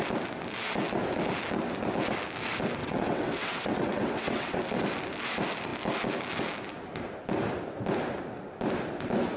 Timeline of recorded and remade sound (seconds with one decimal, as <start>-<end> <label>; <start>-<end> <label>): 0.0-2.8 recorded; 2.8-4.6 remade; 4.6-9.4 recorded